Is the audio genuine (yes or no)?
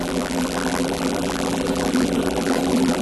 no